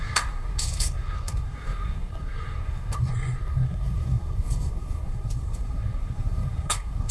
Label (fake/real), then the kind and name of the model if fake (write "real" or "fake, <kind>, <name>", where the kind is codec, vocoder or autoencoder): fake, codec, SNAC